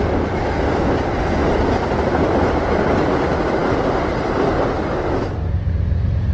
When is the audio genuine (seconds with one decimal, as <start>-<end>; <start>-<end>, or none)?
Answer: 0.0-6.3